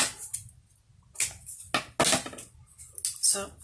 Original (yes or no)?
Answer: yes